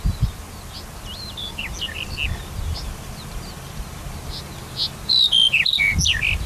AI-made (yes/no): no